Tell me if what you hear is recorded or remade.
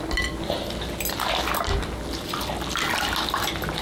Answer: recorded